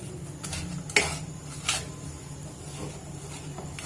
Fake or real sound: real